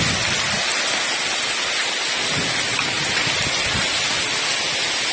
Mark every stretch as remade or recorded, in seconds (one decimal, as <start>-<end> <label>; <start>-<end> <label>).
0.0-5.1 recorded